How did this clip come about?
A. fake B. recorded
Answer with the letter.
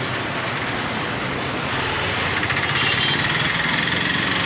A